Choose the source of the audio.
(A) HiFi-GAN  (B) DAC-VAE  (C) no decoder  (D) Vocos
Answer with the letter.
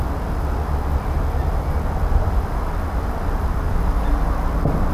C